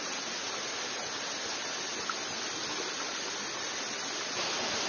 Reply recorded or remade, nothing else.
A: recorded